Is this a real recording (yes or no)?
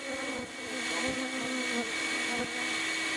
yes